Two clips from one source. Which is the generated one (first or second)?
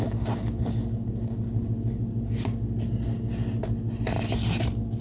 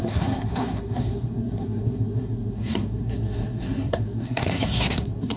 second